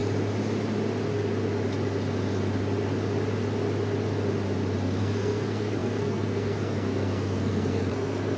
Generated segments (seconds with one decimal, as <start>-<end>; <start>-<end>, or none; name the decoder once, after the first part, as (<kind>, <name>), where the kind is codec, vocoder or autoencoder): 5.0-8.4 (codec, SNAC)